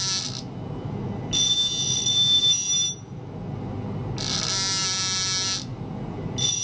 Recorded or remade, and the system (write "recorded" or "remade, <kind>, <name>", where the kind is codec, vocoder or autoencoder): recorded